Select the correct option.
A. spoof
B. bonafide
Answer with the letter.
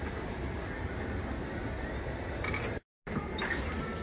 B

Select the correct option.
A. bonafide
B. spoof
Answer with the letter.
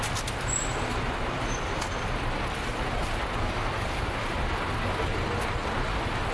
B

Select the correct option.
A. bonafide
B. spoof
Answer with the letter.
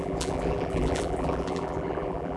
B